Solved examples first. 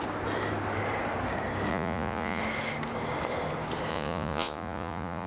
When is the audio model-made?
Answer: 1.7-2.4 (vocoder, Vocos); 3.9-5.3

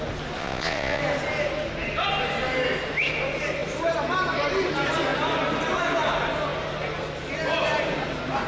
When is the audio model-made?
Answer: 0.4-1.0 (vocoder, Vocos)

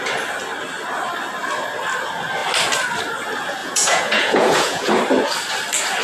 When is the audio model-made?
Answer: 3.6-4.9 (vocoder, Vocos)

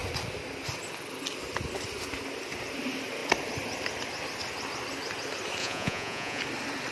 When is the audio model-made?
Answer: 5.6-6.4 (vocoder, Vocos)

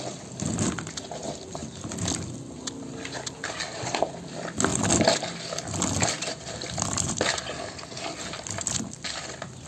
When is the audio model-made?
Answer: none

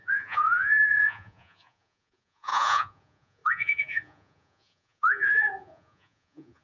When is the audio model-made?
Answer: 0.0-6.6 (vocoder, Vocos)

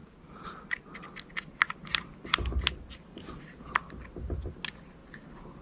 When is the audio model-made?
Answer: none